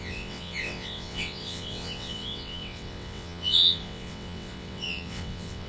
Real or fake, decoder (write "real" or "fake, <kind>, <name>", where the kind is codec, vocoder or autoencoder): fake, vocoder, WaveNeXt